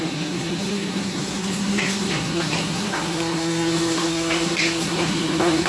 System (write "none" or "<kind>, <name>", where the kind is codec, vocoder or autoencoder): codec, SNAC